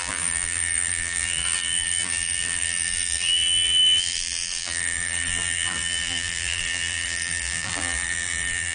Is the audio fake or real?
fake